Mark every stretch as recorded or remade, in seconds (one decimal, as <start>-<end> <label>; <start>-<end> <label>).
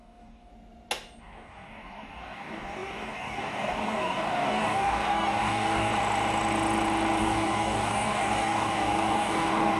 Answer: 0.0-0.5 remade; 0.5-1.2 recorded; 1.2-5.9 remade; 5.9-7.2 recorded; 7.2-9.8 remade